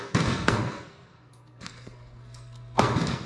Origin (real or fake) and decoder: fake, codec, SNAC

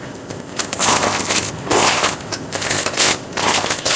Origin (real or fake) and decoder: fake, codec, ZipCodec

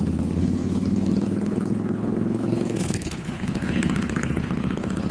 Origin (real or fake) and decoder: fake, codec, HILCodec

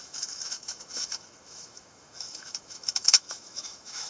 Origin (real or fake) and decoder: fake, autoencoder, DAC-VAE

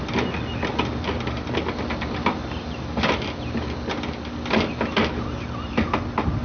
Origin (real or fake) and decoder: real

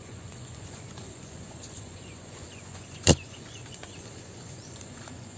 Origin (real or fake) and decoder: fake, vocoder, Vocos